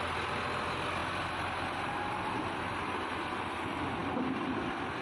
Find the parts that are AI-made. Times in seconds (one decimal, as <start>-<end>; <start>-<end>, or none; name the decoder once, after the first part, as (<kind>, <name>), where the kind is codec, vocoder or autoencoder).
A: none